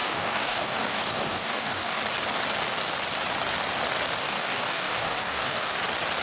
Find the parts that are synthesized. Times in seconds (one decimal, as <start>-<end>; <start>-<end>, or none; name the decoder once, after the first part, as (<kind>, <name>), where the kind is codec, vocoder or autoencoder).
0.0-2.0 (codec, DAC); 4.2-5.8